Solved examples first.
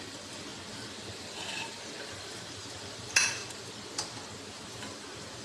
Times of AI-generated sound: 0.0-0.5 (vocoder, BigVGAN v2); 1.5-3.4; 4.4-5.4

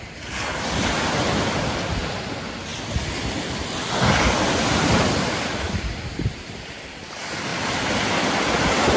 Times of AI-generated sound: 0.0-9.0 (vocoder, BigVGAN v2)

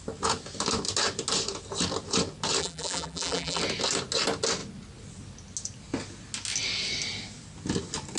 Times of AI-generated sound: 2.6-3.6 (vocoder, BigVGAN v2)

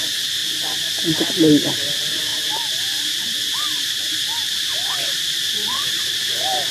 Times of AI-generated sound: 0.0-0.4 (vocoder, BigVGAN v2); 1.3-6.7

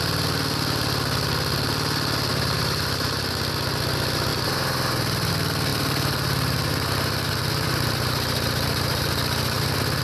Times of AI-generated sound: 2.3-3.2 (vocoder, BigVGAN v2); 4.3-5.3; 5.7-9.6

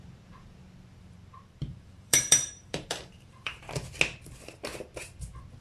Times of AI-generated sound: 1.6-3.7 (vocoder, BigVGAN v2)

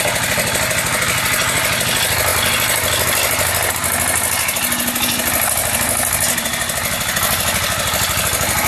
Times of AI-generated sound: none

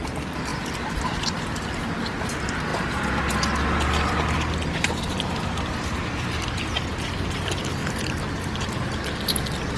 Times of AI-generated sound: 0.5-2.2 (vocoder, BigVGAN v2)